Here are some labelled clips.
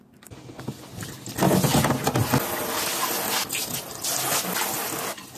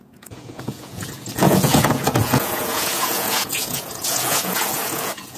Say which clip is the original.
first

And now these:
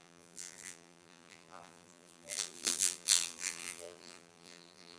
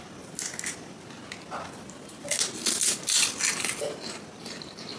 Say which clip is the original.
second